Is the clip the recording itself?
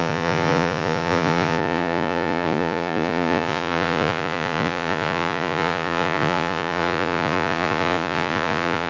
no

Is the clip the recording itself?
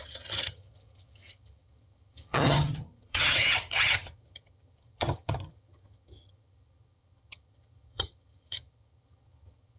no